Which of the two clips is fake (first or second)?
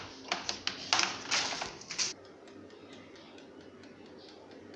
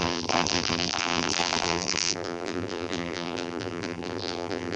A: second